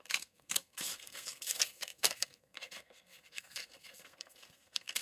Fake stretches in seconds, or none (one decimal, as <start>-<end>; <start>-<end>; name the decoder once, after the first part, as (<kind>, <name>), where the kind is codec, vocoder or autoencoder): 0.0-5.0 (codec, SNAC)